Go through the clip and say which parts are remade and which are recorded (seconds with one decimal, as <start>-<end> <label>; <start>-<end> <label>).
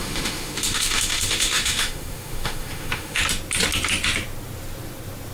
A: 0.0-3.2 remade; 3.2-5.3 recorded